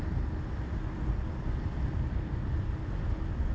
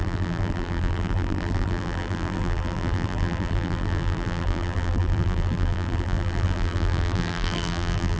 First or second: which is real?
first